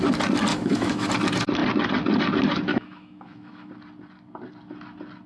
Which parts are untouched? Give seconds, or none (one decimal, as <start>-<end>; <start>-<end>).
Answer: 0.0-0.5; 1.1-2.7; 3.7-5.3